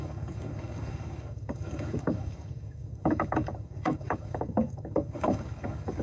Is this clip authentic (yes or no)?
no